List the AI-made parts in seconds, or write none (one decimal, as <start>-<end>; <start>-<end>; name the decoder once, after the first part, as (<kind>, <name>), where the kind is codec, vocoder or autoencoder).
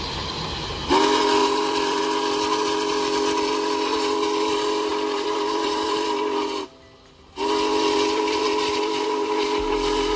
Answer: 1.4-2.0 (vocoder, BigVGAN v2); 4.9-6.4